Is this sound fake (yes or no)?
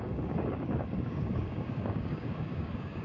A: yes